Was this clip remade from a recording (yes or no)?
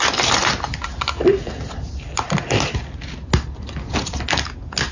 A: no